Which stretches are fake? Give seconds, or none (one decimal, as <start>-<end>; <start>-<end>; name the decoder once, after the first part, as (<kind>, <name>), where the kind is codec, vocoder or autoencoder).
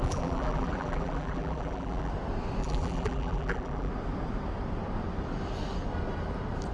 0.0-2.1 (vocoder, BigVGAN v2); 2.6-3.9